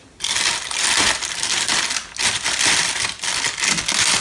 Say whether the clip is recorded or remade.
recorded